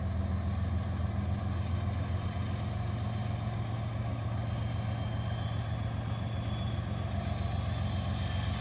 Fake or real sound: real